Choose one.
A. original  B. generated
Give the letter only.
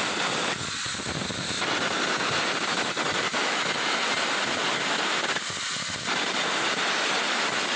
A